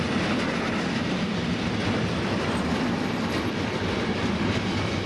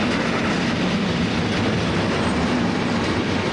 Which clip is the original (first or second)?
second